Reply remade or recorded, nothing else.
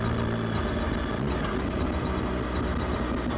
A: recorded